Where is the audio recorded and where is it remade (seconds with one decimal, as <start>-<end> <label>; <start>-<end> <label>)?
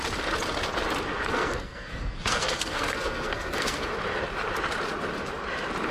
0.0-1.3 recorded; 1.3-3.9 remade; 3.9-5.9 recorded